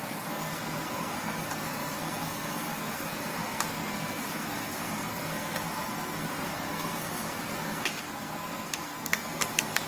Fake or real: fake